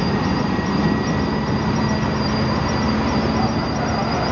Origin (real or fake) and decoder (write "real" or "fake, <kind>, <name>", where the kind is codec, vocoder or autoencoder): real